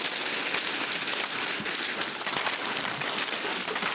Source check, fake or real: real